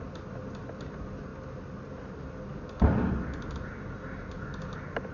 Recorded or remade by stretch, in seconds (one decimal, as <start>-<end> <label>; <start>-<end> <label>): 0.0-5.1 recorded